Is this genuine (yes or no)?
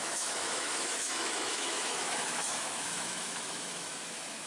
no